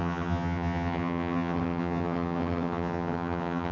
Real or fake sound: fake